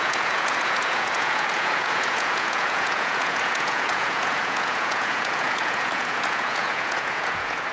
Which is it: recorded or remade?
remade